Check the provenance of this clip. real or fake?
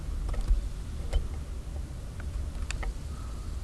real